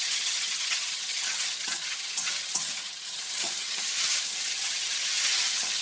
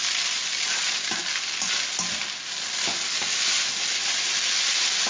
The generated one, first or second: first